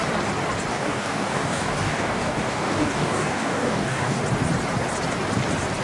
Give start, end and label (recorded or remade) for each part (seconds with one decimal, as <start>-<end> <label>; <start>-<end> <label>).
0.0-0.7 recorded; 0.7-4.2 remade; 4.2-5.8 recorded